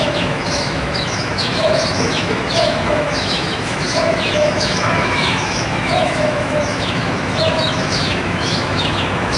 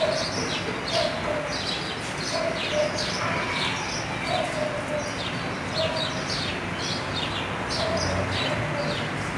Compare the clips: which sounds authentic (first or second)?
second